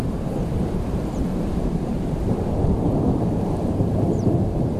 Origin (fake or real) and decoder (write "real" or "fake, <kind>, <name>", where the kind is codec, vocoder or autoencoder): fake, vocoder, BigVGAN v2